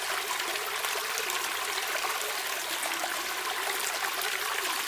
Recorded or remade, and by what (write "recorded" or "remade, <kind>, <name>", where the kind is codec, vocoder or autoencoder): recorded